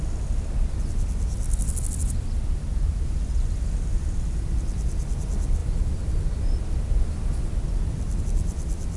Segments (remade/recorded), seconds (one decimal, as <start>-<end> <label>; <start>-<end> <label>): 0.0-9.0 recorded